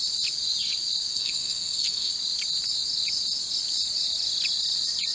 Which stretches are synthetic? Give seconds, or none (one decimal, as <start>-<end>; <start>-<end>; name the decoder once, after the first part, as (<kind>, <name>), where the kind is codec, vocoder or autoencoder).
1.1-2.1 (codec, SNAC)